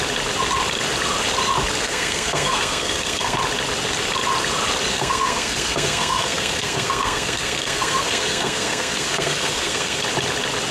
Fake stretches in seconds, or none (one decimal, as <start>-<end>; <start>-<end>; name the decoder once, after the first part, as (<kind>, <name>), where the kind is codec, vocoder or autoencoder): 1.8-3.4 (codec, SNAC); 4.9-10.0